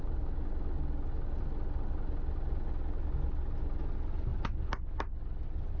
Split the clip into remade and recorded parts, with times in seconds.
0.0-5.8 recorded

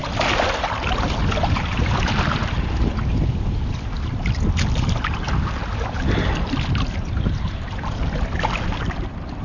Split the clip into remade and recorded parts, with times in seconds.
0.0-9.4 recorded

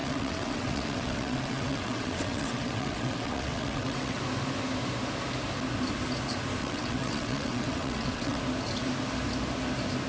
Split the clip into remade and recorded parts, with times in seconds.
0.0-4.2 remade; 4.2-6.6 recorded; 6.6-8.4 remade; 8.4-10.1 recorded

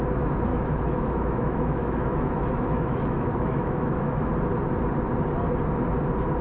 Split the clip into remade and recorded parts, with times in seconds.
0.0-0.5 recorded; 0.5-4.3 remade; 4.3-6.4 recorded

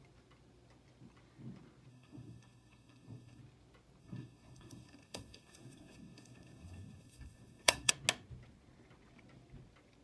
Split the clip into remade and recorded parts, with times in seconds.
0.0-1.9 recorded; 1.9-3.4 remade; 3.4-4.0 recorded; 4.0-7.9 remade; 7.9-10.0 recorded

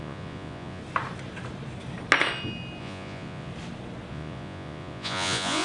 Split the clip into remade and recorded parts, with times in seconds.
0.0-0.8 remade; 0.8-2.8 recorded; 2.8-3.5 remade; 3.5-4.1 recorded; 4.1-5.6 remade

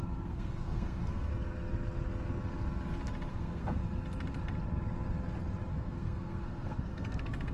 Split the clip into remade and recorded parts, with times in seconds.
0.0-1.3 remade; 1.3-3.3 recorded; 3.3-3.8 remade; 3.8-5.7 recorded; 5.7-7.5 remade

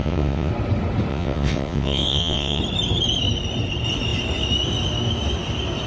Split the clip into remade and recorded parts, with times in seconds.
0.0-0.5 remade; 0.5-1.1 recorded; 1.1-2.6 remade; 2.6-5.9 recorded